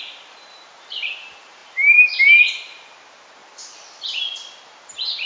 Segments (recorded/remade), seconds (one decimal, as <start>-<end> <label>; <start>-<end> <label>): 0.0-2.9 remade; 2.9-4.8 recorded; 4.8-5.3 remade